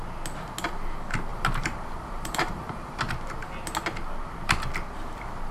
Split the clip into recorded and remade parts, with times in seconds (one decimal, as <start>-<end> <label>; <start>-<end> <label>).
0.0-1.3 recorded; 1.3-3.1 remade; 3.1-5.5 recorded